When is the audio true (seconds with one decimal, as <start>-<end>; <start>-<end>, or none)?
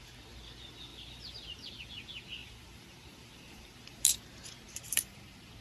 0.0-0.9; 1.7-2.4